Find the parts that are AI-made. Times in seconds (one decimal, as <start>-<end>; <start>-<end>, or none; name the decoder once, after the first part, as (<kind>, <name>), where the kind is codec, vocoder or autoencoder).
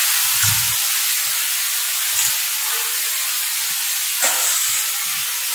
none